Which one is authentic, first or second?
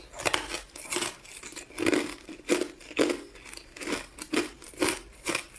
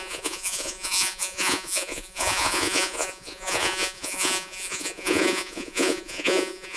first